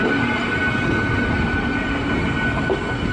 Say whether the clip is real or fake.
real